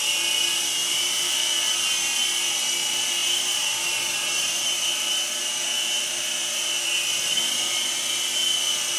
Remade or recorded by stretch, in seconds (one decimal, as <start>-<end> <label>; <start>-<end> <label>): 0.0-0.8 recorded; 0.8-1.5 remade; 1.5-3.2 recorded; 3.2-7.2 remade; 7.2-9.0 recorded